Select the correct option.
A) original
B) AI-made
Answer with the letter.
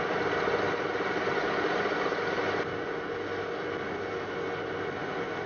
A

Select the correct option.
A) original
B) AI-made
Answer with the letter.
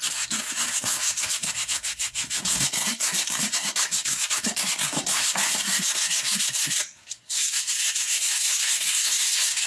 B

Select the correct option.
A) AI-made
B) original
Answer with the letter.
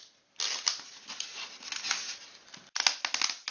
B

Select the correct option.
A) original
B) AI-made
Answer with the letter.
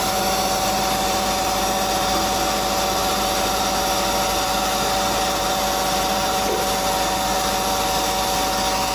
A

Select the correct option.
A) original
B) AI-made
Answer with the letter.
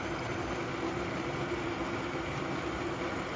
A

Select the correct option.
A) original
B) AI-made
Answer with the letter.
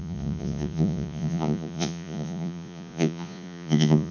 B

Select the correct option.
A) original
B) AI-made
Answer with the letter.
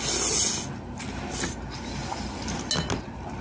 A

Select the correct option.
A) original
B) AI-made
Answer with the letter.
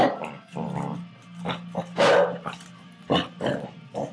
A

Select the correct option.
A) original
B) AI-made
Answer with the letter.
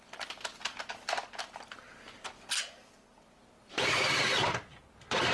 B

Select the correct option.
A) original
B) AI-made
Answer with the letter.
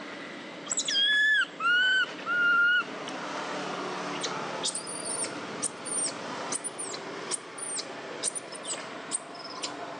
A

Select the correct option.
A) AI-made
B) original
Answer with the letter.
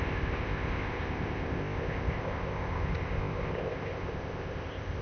A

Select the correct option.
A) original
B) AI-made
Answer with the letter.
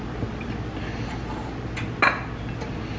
A